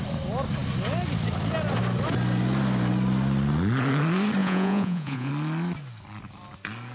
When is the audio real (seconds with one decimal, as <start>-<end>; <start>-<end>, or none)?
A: 0.0-4.4; 5.3-6.9